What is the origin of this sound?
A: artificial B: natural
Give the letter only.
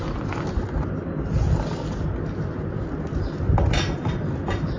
B